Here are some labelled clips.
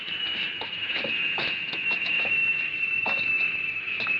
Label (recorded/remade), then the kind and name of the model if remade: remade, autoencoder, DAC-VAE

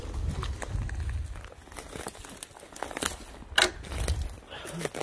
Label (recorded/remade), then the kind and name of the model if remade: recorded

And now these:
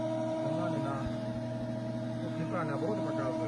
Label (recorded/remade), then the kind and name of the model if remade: recorded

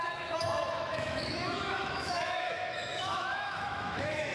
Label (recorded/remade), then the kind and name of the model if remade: remade, autoencoder, DAC-VAE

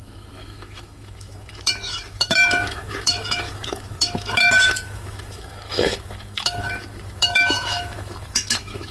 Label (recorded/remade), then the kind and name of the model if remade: remade, autoencoder, DAC-VAE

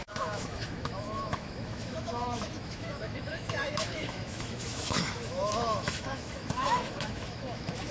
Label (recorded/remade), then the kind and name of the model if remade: remade, autoencoder, DAC-VAE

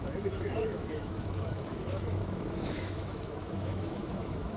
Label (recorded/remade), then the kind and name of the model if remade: remade, autoencoder, DAC-VAE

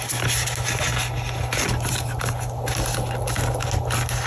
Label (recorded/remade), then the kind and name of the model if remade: recorded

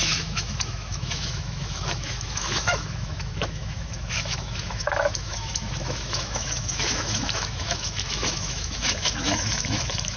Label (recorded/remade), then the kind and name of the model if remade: remade, autoencoder, DAC-VAE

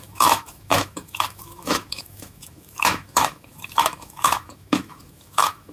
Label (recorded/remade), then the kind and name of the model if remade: remade, autoencoder, DAC-VAE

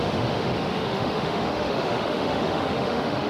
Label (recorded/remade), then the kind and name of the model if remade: remade, autoencoder, DAC-VAE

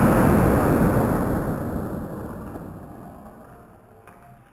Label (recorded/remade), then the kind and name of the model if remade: recorded